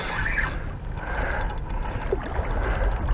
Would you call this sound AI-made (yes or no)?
no